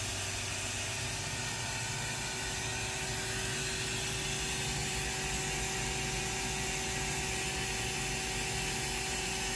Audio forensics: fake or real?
real